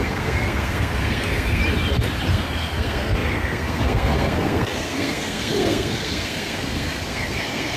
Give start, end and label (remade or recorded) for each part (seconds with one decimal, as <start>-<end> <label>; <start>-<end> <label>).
0.0-1.6 remade; 1.6-2.3 recorded; 2.3-7.8 remade